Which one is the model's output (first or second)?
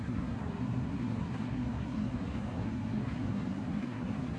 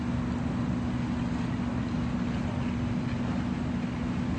first